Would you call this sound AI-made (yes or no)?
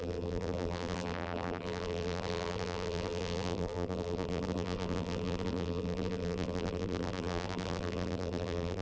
yes